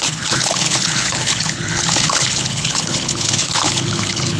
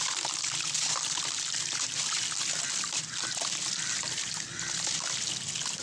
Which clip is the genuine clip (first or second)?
second